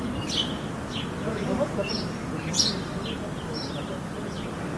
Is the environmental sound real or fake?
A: real